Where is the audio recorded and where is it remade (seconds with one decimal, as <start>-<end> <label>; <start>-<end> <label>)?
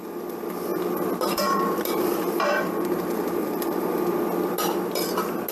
0.0-0.7 recorded; 0.7-4.0 remade; 4.0-5.5 recorded